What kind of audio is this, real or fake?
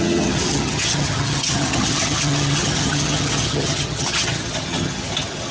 fake